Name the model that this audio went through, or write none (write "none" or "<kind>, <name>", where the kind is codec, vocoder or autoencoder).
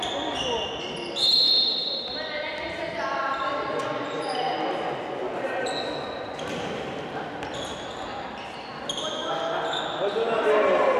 none